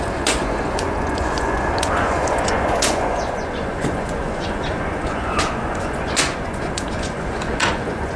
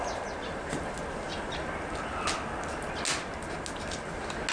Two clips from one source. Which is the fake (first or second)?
first